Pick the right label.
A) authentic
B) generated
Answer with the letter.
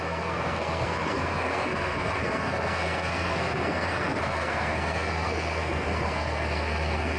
B